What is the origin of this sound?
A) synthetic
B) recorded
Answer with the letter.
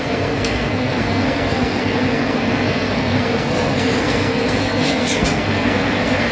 A